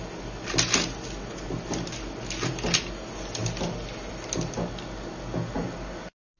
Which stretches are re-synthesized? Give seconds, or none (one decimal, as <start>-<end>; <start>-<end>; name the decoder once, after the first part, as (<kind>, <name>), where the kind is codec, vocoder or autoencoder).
none